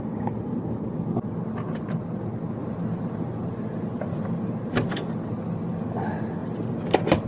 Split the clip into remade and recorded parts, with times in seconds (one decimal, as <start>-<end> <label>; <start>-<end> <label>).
0.0-2.6 recorded; 2.6-5.3 remade; 5.3-6.4 recorded; 6.4-7.3 remade